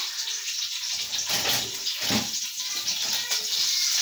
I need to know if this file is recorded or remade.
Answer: recorded